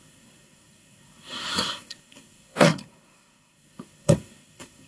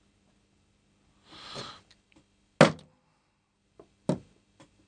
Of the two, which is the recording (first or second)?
second